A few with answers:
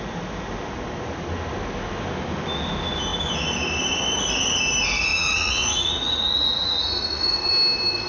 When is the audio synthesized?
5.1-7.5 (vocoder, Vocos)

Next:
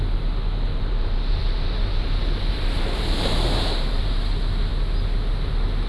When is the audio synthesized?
0.7-4.2 (vocoder, BigVGAN v2)

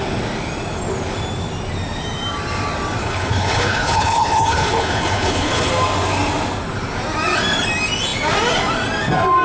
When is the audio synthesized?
3.0-5.7 (codec, HILCodec)

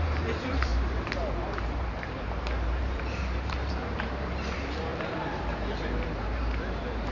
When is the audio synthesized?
0.0-7.1 (vocoder, BigVGAN v2)

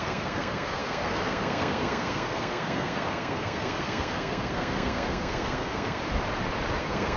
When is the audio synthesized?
0.0-6.0 (codec, SNAC); 6.8-7.2